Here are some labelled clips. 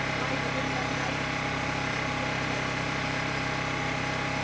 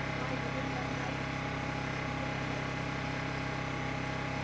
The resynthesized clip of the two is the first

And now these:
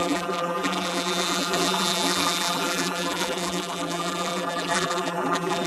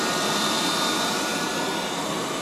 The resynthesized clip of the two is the first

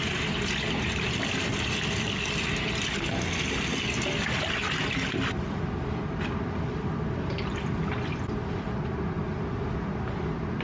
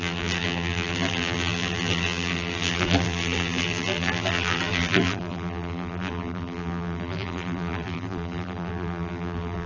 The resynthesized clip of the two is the second